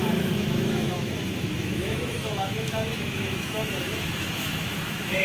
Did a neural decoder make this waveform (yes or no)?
yes